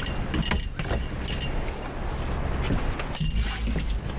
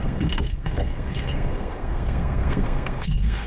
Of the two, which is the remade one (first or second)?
second